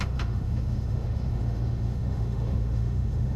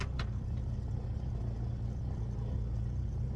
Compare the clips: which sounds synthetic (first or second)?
first